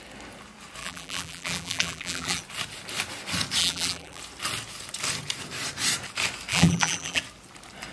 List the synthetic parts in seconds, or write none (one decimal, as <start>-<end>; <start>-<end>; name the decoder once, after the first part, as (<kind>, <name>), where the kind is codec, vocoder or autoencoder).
0.8-2.4 (vocoder, BigVGAN v2); 3.6-4.2; 6.5-7.2